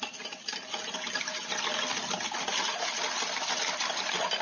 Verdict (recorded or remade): recorded